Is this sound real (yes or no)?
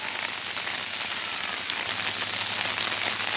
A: yes